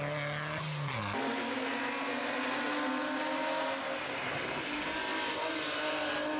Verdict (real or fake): real